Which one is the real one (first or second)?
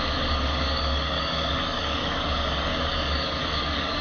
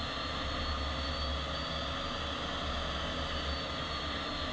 second